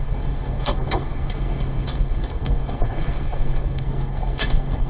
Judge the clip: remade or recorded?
remade